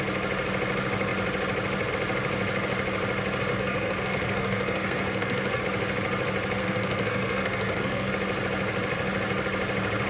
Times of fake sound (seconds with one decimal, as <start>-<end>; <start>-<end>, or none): 3.5-5.6; 6.6-8.1